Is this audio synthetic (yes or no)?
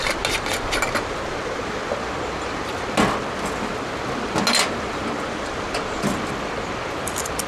no